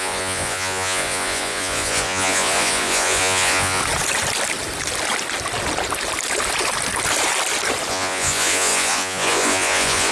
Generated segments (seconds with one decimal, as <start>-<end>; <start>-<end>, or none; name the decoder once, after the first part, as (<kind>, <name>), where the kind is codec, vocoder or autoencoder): 0.0-3.8 (vocoder, Vocos); 7.9-10.1